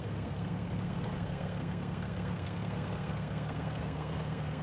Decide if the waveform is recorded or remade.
remade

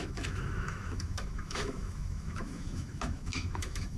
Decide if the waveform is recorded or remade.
remade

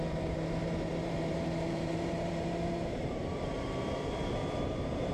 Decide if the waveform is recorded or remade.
remade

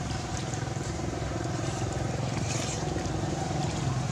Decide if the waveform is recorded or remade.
remade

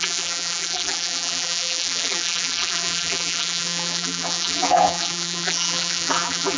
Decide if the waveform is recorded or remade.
remade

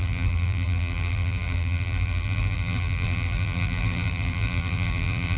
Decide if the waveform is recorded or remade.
remade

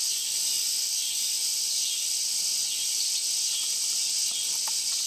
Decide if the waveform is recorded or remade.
recorded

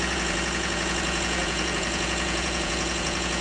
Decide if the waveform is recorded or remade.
remade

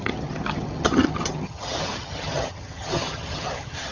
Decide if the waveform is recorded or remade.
remade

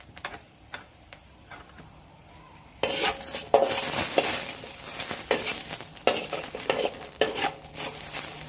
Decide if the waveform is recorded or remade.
recorded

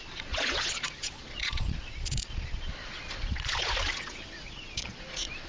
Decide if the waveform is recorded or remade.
remade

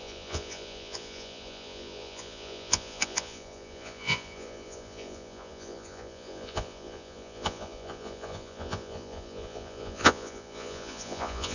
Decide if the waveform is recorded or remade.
remade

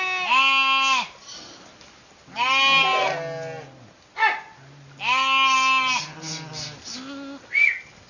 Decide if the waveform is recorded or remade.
recorded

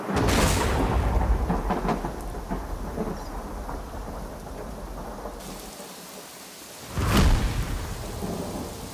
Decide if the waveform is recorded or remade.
recorded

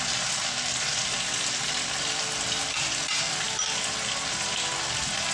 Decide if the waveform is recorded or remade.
recorded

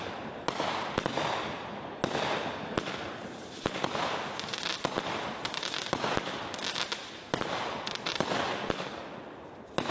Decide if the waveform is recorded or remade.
recorded